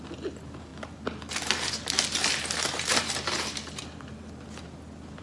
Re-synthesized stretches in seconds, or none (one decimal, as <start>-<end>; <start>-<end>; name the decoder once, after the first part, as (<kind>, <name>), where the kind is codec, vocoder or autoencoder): none